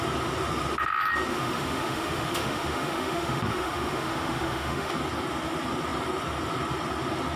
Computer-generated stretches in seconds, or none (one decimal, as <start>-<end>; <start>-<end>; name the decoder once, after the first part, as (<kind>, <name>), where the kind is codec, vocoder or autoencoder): 1.3-4.9 (autoencoder, DAC-VAE)